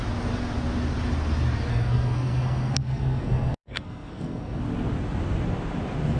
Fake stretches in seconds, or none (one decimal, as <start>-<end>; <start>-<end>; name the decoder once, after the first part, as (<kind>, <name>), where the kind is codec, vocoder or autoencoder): 1.7-4.6 (codec, SNAC)